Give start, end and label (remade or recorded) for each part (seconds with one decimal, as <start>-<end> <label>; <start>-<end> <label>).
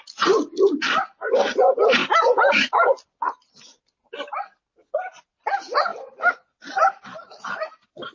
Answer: 0.0-8.1 recorded